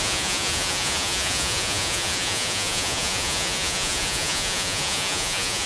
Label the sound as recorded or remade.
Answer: remade